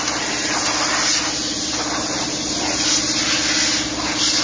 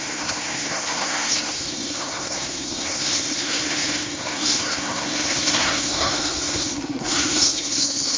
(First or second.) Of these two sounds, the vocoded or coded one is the second